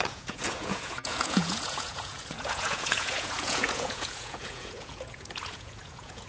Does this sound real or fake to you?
fake